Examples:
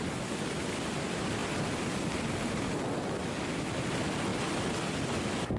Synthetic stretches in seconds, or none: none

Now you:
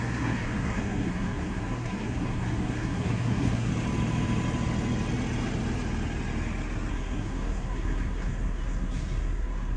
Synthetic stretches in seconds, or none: 0.0-3.7 (codec, SNAC); 6.9-9.8

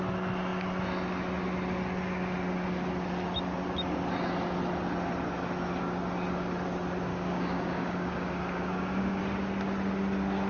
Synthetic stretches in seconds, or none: 7.1-9.2 (codec, DAC)

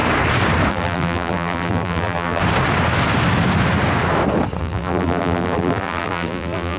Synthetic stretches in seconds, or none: 0.7-2.4 (vocoder, BigVGAN v2); 4.6-6.8

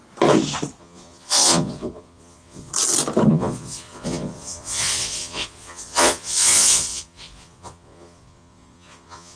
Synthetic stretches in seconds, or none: 0.8-2.7 (vocoder, Vocos); 3.3-9.4

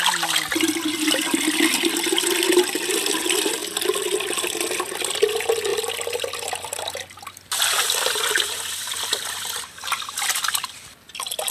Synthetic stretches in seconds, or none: none

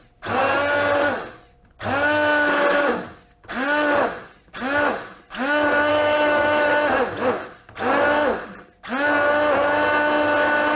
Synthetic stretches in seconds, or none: 5.9-6.7 (autoencoder, DAC-VAE)